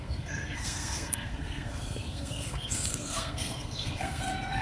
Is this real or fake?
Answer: fake